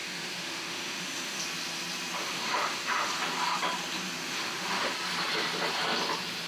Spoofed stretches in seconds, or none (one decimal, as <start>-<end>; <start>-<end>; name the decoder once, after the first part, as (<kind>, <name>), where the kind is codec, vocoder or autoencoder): 0.0-1.4 (autoencoder, DAC-VAE); 2.2-3.1; 4.2-4.9